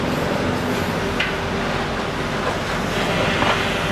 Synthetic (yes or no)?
no